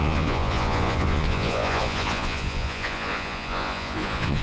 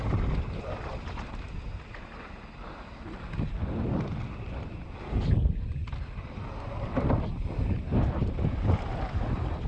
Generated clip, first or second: first